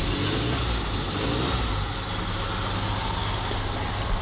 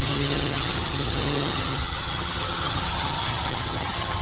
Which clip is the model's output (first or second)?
second